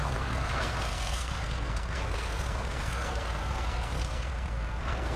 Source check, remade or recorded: remade